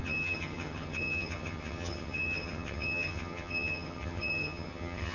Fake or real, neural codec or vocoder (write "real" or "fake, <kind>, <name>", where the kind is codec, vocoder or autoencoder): fake, vocoder, HiFi-GAN